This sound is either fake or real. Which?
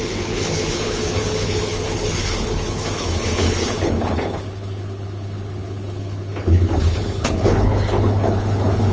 fake